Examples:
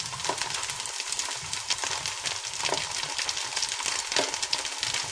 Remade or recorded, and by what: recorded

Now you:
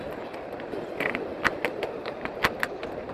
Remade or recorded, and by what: recorded